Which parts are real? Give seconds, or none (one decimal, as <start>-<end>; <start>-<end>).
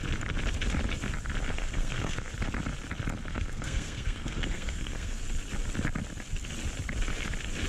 0.0-1.5; 2.3-3.3; 5.2-7.7